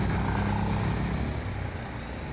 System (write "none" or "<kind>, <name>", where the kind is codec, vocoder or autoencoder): none